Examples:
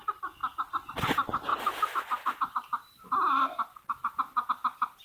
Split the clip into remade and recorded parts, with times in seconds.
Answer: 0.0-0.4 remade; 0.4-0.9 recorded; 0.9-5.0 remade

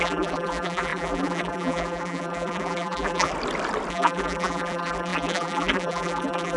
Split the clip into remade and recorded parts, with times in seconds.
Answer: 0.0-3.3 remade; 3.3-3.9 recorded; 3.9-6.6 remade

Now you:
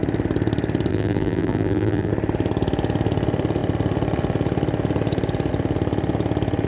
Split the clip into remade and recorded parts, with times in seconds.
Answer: 0.0-0.9 recorded; 0.9-2.1 remade; 2.1-6.7 recorded

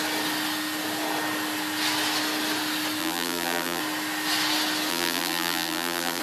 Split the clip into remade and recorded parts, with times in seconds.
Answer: 0.0-3.0 recorded; 3.0-3.8 remade; 3.8-4.9 recorded; 4.9-6.2 remade